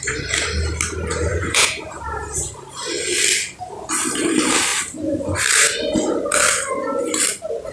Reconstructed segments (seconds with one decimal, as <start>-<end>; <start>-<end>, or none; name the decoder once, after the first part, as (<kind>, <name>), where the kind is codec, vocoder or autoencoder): 1.3-1.8 (vocoder, Vocos)